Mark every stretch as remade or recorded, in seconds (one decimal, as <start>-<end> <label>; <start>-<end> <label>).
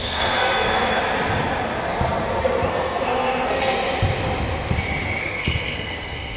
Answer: 0.0-1.0 remade; 1.0-2.7 recorded; 2.7-3.7 remade; 3.7-5.2 recorded; 5.2-6.4 remade